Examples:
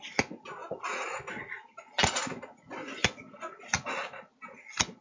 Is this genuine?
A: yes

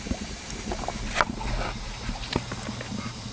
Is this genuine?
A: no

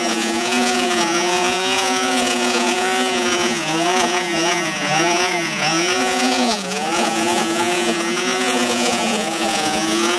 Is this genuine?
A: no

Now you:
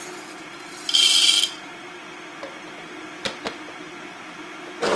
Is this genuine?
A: yes